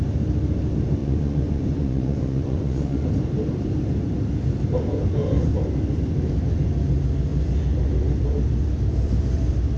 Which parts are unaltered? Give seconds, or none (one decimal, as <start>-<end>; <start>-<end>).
0.0-1.0; 3.1-9.8